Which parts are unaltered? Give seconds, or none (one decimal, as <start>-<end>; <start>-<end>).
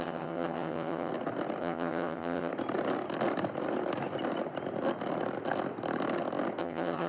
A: 1.1-1.6; 2.5-6.6